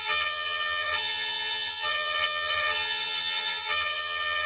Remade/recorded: remade